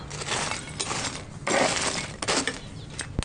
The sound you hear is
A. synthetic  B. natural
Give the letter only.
B